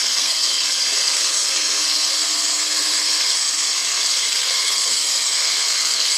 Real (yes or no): no